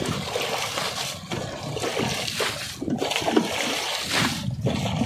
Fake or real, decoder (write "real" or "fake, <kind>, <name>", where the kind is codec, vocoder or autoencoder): real